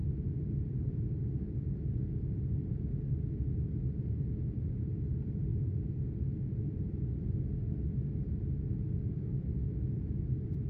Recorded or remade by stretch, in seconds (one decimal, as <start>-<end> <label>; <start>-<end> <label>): 0.0-0.9 remade; 0.9-10.7 recorded